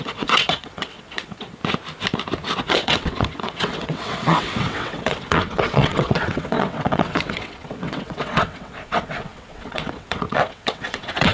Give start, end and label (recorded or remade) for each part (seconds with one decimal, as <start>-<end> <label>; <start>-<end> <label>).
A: 0.0-1.6 remade; 1.6-2.6 recorded; 2.6-11.3 remade